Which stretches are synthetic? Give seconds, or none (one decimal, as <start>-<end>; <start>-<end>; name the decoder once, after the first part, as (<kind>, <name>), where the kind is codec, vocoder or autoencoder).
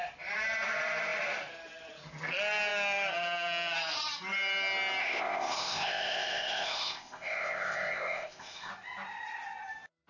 5.0-8.7 (codec, ZipCodec)